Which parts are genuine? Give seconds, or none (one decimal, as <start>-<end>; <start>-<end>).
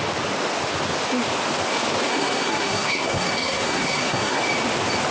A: 0.0-2.1; 4.4-5.1